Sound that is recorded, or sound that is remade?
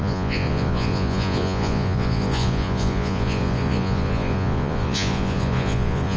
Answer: remade